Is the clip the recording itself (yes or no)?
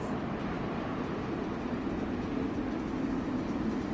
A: yes